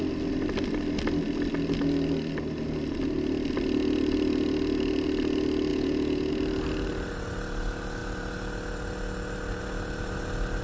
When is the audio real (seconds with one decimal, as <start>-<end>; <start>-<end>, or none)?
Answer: 0.0-5.7; 6.3-10.6